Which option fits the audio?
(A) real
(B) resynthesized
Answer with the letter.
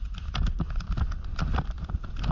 A